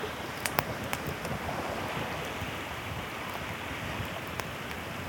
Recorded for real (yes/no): yes